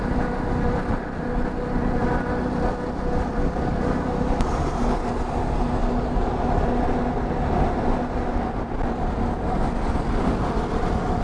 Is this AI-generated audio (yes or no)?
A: no